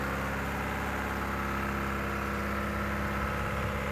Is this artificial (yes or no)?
no